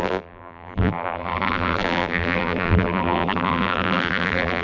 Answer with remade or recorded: remade